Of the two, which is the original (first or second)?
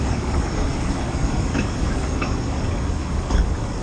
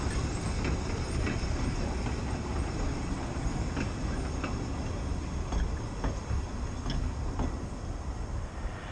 second